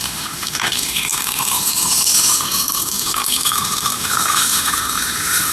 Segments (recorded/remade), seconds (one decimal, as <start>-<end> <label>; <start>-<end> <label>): 0.0-5.5 remade